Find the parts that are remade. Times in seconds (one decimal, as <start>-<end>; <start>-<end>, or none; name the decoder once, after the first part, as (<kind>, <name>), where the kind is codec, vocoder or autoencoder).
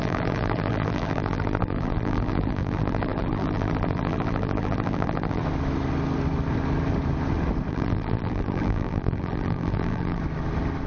0.0-5.4 (vocoder, BigVGAN v2); 7.7-10.2